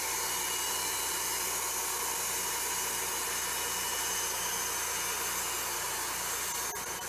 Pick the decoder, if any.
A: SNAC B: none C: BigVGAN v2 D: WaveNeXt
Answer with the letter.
B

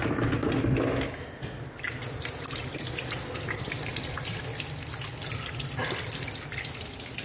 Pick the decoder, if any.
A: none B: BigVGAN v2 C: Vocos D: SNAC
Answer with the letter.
A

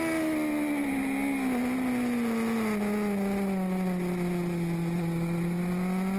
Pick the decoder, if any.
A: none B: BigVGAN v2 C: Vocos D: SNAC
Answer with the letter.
A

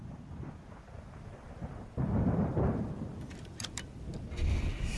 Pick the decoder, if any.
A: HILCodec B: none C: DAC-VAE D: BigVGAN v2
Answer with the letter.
D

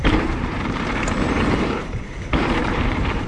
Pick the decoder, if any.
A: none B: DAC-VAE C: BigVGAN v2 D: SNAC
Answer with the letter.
C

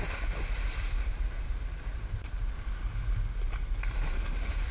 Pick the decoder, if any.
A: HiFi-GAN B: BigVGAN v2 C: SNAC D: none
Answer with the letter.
D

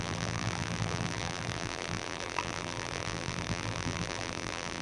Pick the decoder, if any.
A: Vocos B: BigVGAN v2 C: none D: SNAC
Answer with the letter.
B